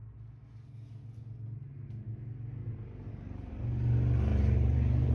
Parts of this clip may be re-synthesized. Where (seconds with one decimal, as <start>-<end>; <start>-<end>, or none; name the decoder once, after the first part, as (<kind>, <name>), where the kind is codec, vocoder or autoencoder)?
2.6-3.5 (vocoder, BigVGAN v2); 4.3-5.1